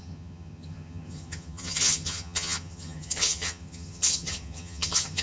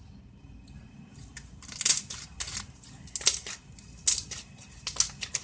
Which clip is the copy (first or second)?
first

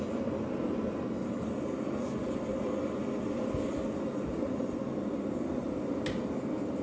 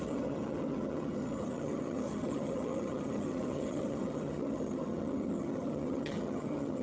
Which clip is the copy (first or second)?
second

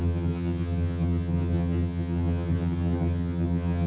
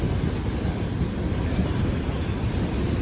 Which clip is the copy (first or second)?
first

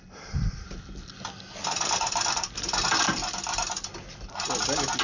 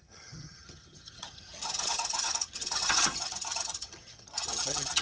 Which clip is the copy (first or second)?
second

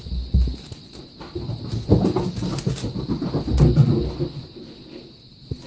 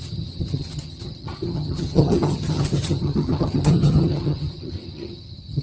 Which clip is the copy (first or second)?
second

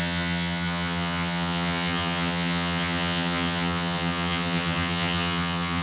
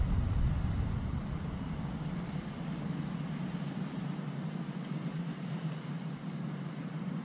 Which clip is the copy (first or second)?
first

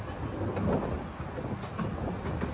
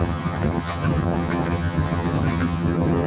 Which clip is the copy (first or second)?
second